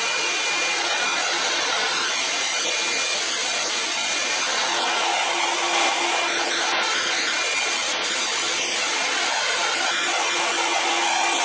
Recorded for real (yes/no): yes